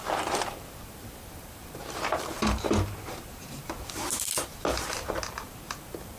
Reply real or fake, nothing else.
fake